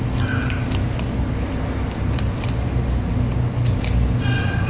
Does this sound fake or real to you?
real